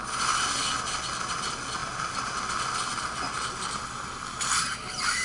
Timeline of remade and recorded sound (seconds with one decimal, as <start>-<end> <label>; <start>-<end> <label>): 0.0-5.2 recorded